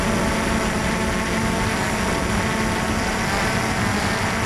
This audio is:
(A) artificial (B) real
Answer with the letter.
B